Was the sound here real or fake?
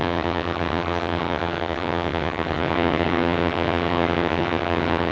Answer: fake